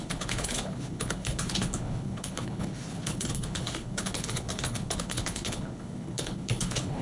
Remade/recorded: remade